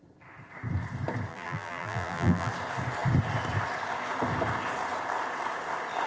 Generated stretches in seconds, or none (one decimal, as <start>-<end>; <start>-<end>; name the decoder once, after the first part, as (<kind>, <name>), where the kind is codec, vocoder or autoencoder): 1.3-2.5 (vocoder, BigVGAN v2)